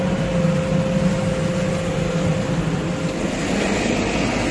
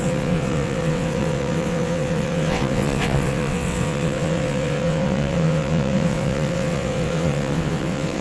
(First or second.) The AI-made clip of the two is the second